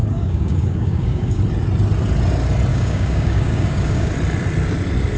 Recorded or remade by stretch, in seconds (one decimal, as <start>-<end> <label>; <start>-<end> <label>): 0.0-1.4 remade; 1.4-2.7 recorded; 2.7-4.1 remade; 4.1-5.2 recorded